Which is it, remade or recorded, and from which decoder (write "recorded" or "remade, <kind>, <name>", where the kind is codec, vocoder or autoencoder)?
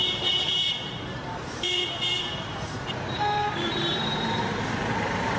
remade, vocoder, BigVGAN v2